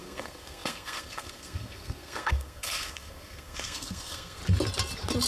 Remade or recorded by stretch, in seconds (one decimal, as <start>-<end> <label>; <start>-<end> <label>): 0.0-4.4 remade; 4.4-5.3 recorded